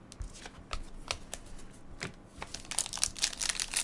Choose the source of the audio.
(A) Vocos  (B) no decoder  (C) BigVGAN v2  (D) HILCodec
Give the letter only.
B